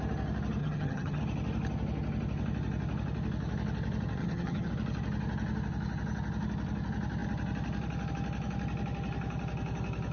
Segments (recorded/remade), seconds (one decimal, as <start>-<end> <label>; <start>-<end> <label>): 0.0-0.6 recorded; 0.6-1.2 remade; 1.2-4.2 recorded; 4.2-4.7 remade; 4.7-10.1 recorded